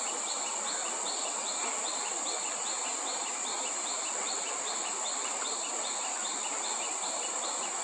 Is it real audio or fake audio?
real